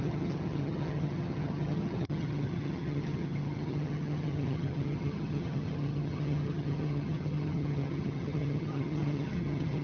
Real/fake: fake